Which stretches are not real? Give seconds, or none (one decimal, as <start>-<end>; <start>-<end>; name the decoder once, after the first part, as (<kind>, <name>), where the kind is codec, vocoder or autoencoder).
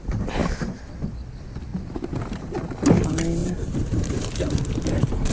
1.7-2.5 (vocoder, BigVGAN v2); 3.4-4.3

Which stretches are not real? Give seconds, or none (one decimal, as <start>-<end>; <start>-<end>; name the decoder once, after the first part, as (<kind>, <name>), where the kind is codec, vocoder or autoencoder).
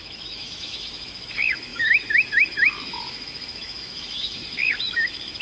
0.0-5.4 (autoencoder, DAC-VAE)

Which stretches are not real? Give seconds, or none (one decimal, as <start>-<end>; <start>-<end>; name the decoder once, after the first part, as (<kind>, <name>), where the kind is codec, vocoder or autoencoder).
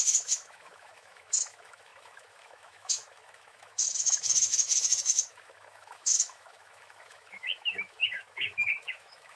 0.0-9.4 (autoencoder, DAC-VAE)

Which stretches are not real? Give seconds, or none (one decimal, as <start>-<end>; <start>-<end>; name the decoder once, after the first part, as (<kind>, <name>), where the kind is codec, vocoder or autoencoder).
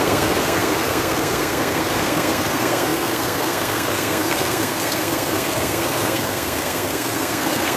0.0-7.8 (codec, SNAC)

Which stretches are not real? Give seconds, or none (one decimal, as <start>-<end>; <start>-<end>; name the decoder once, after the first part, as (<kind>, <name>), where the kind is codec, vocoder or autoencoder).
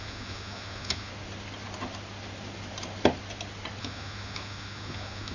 0.0-1.1 (autoencoder, DAC-VAE); 3.8-5.3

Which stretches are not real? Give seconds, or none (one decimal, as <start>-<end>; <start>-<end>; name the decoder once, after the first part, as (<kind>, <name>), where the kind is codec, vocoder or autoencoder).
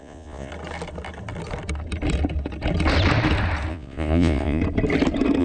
0.0-0.5 (vocoder, Vocos); 3.7-4.6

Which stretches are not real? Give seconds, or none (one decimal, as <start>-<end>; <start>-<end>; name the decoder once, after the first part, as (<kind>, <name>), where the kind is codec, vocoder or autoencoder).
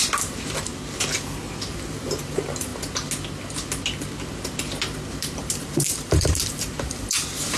0.0-0.7 (vocoder, BigVGAN v2); 1.9-2.7; 5.2-7.6